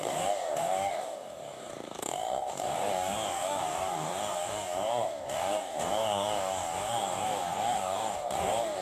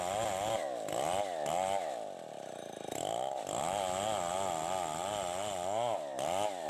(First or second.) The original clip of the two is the second